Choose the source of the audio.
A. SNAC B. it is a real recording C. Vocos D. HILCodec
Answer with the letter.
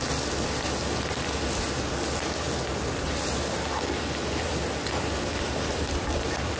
B